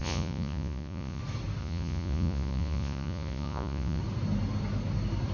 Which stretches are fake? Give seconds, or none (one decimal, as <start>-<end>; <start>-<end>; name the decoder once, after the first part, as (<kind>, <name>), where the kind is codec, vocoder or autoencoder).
0.0-1.2 (vocoder, Vocos); 1.6-4.0